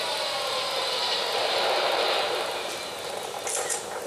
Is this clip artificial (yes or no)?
yes